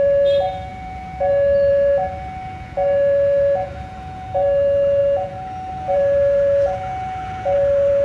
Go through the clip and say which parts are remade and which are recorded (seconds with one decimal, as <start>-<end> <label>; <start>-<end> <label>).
0.0-8.0 remade